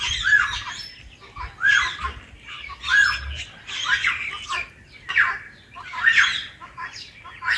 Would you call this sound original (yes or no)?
yes